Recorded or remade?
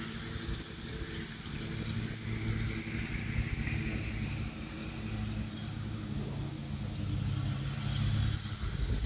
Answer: recorded